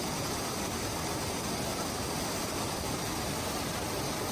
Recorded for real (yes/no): yes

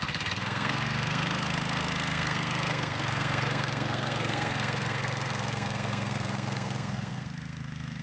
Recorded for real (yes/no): no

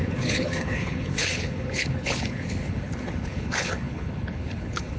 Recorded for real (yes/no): no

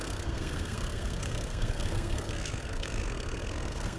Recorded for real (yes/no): no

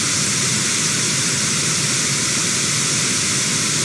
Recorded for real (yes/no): yes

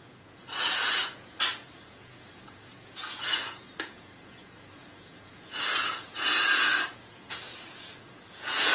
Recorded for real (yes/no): no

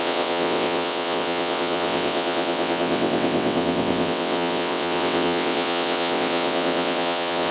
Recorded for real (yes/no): no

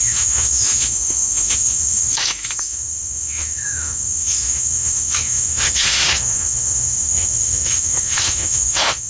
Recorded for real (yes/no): no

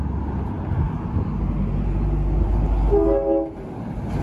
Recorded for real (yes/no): yes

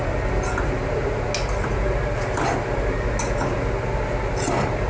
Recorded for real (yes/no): yes